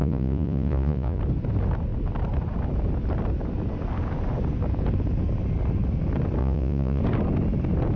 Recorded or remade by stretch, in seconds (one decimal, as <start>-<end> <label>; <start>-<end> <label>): 0.0-1.2 remade; 1.2-6.4 recorded; 6.4-7.0 remade; 7.0-8.0 recorded